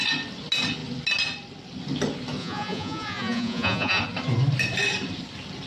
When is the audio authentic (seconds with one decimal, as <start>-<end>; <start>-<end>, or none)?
0.0-2.4; 4.0-5.7